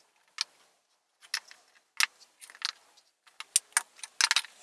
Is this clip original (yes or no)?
yes